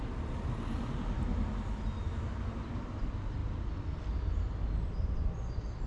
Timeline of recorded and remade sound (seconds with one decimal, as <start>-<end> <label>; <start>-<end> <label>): 0.0-5.9 recorded